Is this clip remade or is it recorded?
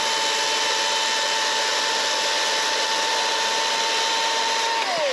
recorded